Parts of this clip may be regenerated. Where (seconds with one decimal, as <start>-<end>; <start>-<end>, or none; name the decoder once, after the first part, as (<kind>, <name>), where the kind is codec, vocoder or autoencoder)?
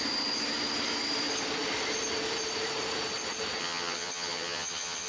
3.6-5.1 (vocoder, HiFi-GAN)